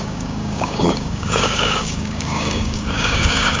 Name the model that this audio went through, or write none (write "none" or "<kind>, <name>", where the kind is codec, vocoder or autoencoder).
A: codec, DAC